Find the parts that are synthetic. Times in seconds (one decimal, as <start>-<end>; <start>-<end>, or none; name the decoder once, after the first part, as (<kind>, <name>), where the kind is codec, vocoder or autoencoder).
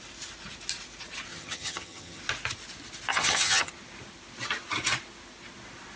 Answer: 1.3-2.2 (vocoder, HiFi-GAN); 3.1-3.7